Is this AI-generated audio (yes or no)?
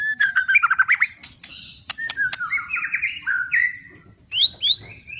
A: yes